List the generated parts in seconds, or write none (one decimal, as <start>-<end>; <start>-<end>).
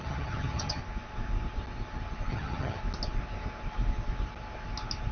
0.0-0.8; 2.3-2.8